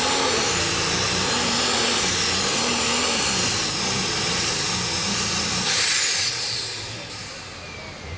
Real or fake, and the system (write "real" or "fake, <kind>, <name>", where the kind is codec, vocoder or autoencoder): real